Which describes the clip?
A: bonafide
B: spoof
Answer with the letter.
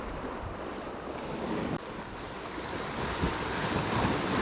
A